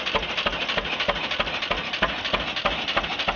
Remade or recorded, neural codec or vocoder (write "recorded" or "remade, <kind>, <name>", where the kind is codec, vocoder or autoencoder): recorded